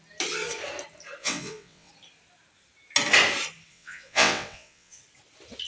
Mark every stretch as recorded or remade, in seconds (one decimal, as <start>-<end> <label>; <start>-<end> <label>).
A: 0.0-1.2 recorded; 1.2-1.9 remade; 1.9-3.7 recorded; 3.7-5.0 remade; 5.0-5.7 recorded